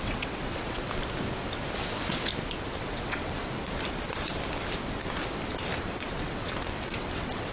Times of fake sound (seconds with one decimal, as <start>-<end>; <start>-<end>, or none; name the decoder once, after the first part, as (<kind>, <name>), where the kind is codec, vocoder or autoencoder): 0.0-0.8 (vocoder, WaveNeXt); 1.8-2.3; 2.8-3.4; 6.2-7.5